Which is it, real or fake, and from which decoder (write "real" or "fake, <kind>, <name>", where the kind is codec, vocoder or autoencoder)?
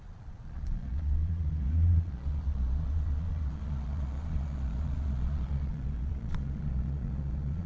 fake, vocoder, Vocos